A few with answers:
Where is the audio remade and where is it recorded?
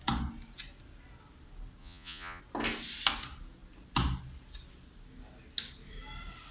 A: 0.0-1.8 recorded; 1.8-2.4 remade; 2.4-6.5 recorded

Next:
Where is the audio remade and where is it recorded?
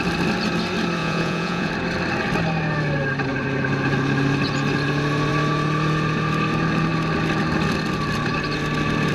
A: 0.0-1.0 recorded; 1.0-1.7 remade; 1.7-9.1 recorded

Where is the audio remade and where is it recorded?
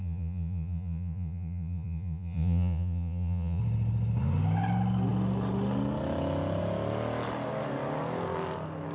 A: 0.0-3.6 remade; 3.6-8.9 recorded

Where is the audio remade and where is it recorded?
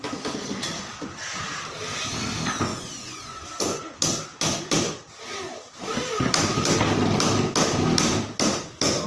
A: 0.0-2.7 recorded; 2.7-3.8 remade; 3.8-9.1 recorded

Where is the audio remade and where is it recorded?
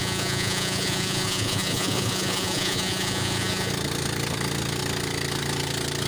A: 0.0-3.7 remade; 3.7-6.1 recorded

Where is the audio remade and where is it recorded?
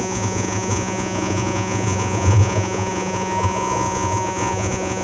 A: 0.0-5.0 remade